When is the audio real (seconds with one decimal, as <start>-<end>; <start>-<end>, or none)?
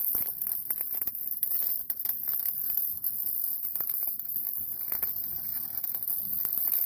0.4-1.7; 5.5-6.3